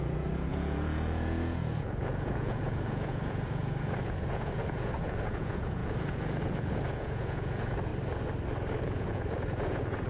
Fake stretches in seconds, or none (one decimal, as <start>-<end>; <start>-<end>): 0.0-7.9; 8.8-10.1